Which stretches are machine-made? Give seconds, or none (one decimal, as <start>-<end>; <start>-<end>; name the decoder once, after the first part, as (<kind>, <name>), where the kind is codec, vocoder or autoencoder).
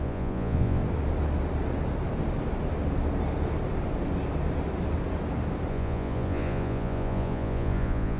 0.0-0.8 (vocoder, Vocos); 5.7-8.2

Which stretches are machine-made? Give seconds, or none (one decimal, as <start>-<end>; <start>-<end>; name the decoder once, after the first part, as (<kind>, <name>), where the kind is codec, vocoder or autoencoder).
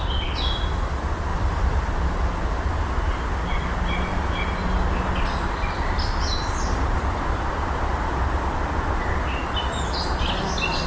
1.3-1.9 (vocoder, BigVGAN v2)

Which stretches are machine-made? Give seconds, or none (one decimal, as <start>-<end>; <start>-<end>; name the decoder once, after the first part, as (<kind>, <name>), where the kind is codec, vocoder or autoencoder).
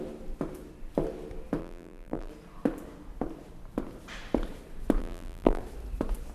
1.6-2.3 (vocoder, BigVGAN v2); 5.0-5.6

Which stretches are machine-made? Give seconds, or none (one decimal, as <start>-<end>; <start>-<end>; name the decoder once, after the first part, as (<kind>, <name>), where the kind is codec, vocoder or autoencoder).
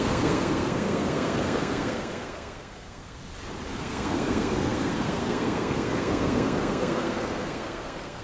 0.0-3.2 (codec, SNAC); 3.7-8.2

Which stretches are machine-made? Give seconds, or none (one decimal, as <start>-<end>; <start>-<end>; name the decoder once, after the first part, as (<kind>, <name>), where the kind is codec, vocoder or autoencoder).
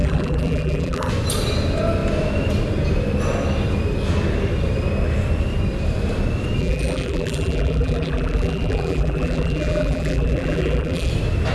0.0-1.1 (vocoder, BigVGAN v2); 6.6-11.1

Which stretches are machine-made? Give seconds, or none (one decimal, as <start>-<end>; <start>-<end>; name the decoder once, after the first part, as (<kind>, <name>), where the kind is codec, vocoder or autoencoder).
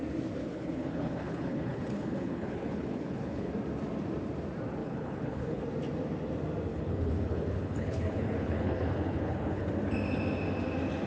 0.4-3.5 (codec, HILCodec); 4.8-5.6; 6.7-9.7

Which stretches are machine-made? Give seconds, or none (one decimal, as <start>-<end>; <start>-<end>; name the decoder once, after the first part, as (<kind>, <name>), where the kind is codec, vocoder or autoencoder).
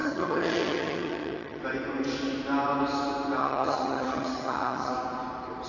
0.0-1.6 (vocoder, HiFi-GAN); 3.4-4.9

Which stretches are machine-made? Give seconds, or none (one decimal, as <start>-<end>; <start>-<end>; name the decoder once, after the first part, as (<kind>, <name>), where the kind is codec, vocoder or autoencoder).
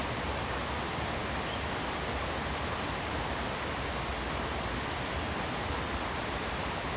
none